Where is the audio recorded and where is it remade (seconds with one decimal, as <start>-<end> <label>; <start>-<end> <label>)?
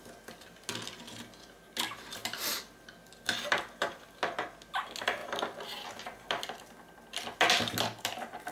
0.0-8.5 recorded